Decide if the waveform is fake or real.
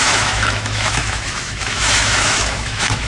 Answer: fake